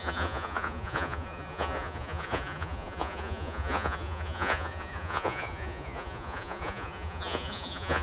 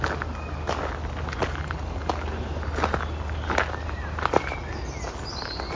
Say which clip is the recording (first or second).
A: second